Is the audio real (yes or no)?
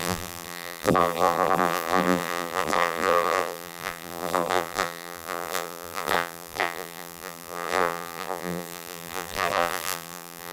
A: no